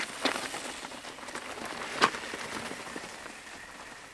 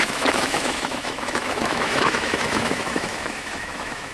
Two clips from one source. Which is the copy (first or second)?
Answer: second